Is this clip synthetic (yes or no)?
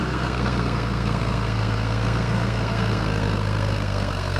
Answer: yes